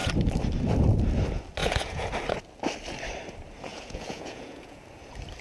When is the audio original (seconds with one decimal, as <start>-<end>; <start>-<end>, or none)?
0.0-1.6; 2.1-3.7; 4.8-5.4